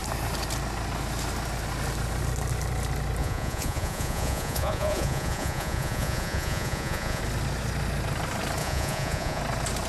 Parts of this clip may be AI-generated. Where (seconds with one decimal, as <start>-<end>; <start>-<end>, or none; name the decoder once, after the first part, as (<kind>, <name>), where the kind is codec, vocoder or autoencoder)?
3.2-7.2 (vocoder, Vocos); 8.6-9.4